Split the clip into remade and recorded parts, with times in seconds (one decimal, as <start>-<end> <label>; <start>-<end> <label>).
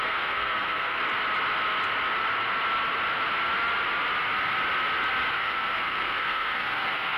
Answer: 0.0-1.0 remade; 1.0-5.3 recorded; 5.3-7.2 remade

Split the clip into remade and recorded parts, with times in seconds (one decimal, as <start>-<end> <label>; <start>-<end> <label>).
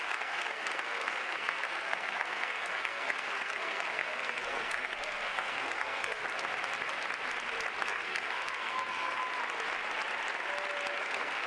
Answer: 0.0-6.2 remade; 6.2-7.8 recorded; 7.8-9.2 remade; 9.2-11.0 recorded; 11.0-11.5 remade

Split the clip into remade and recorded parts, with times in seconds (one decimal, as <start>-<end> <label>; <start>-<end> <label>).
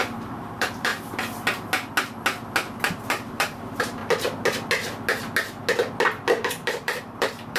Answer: 0.0-0.9 remade; 0.9-2.9 recorded; 2.9-4.0 remade; 4.0-6.3 recorded; 6.3-7.6 remade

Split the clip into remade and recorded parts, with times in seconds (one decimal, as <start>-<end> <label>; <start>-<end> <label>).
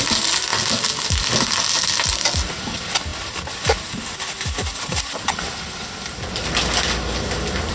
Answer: 0.0-7.7 recorded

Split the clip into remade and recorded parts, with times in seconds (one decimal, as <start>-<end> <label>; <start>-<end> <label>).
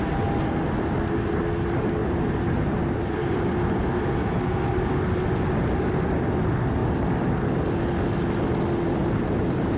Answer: 0.0-2.0 recorded; 2.0-3.5 remade; 3.5-9.0 recorded; 9.0-9.8 remade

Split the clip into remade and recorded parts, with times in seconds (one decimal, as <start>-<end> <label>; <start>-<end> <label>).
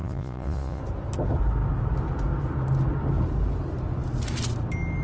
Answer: 0.0-0.8 remade; 0.8-5.0 recorded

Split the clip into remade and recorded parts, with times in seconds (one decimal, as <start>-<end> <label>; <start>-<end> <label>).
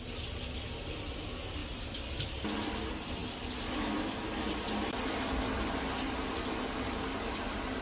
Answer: 0.0-7.8 recorded